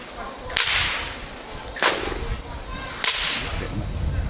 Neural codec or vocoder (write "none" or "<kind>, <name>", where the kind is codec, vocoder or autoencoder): none